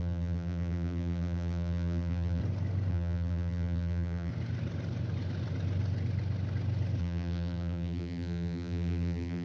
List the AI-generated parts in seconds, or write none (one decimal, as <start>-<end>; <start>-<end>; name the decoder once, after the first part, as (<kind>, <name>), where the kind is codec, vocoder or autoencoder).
0.0-2.4 (vocoder, BigVGAN v2); 2.9-4.3; 7.0-9.4